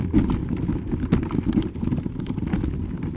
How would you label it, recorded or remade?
recorded